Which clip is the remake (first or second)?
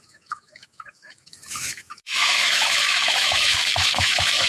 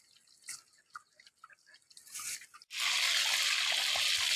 first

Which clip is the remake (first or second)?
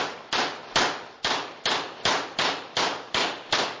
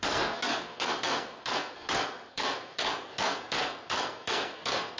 second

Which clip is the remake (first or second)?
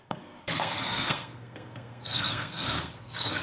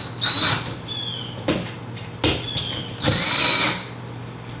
first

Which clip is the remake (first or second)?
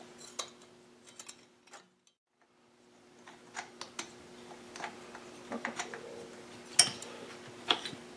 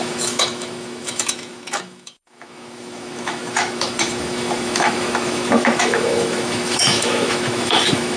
second